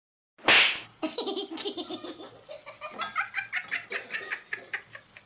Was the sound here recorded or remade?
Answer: recorded